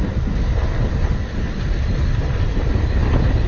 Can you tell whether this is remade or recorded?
recorded